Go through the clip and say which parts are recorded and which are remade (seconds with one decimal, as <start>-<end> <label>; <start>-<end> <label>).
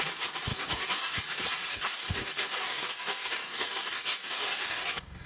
0.0-0.5 recorded; 0.5-1.2 remade; 1.2-1.7 recorded; 1.7-5.3 remade